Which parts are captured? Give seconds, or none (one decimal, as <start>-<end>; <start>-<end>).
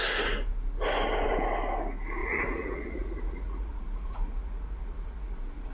0.0-2.2